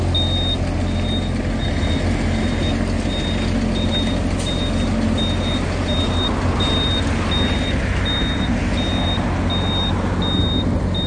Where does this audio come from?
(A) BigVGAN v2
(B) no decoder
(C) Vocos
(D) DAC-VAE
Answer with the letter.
B